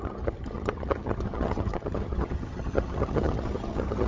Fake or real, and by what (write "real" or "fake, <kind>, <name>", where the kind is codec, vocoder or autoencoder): fake, vocoder, HiFi-GAN